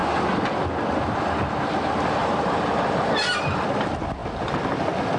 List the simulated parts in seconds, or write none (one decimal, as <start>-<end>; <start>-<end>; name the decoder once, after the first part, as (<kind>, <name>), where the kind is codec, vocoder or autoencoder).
2.2-3.1 (vocoder, BigVGAN v2)